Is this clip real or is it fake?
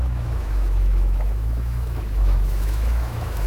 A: fake